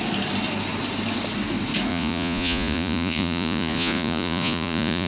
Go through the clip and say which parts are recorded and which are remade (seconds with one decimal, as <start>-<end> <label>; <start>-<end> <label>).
0.0-1.9 recorded; 1.9-5.1 remade